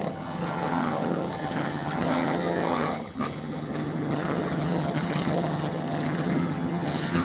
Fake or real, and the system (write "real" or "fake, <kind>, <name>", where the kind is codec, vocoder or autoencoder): fake, vocoder, HiFi-GAN